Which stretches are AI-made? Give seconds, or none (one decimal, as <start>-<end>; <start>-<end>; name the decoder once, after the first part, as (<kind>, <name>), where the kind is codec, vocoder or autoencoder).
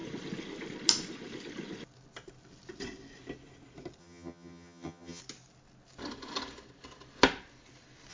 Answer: 4.0-5.2 (vocoder, HiFi-GAN)